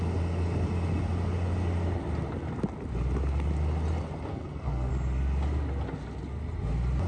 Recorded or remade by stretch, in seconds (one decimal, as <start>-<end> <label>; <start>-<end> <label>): 0.0-4.3 recorded; 4.3-4.9 remade; 4.9-7.1 recorded